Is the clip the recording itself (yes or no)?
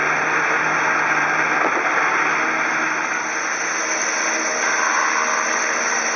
yes